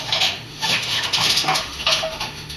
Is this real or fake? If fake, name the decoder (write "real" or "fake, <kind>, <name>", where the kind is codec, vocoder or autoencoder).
fake, autoencoder, DAC-VAE